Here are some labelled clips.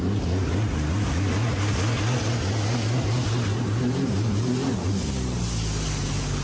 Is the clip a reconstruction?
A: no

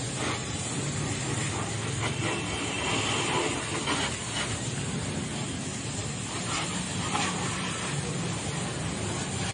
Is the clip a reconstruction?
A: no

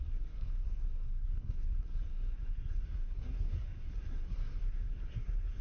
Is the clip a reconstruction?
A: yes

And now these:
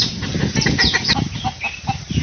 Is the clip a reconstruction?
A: no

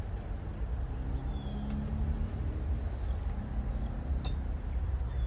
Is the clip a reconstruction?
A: no